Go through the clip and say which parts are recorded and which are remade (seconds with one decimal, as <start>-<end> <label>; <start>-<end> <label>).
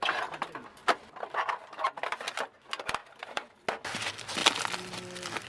0.0-3.0 recorded; 3.0-3.5 remade; 3.5-5.5 recorded